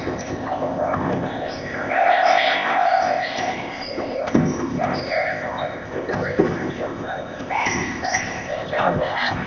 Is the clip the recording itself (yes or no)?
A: no